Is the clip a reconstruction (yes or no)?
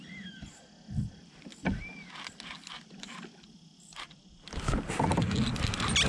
no